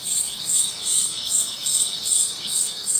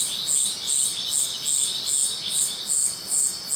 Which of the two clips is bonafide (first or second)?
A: second